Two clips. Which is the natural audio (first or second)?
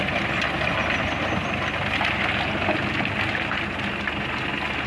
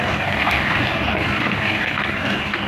first